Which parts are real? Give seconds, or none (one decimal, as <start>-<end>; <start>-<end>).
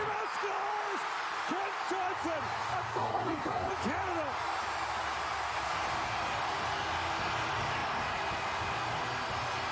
0.0-2.9; 3.7-9.7